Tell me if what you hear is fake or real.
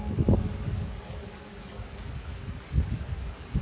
fake